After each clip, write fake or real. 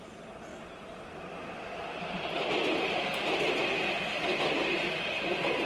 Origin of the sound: real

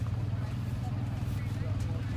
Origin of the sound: real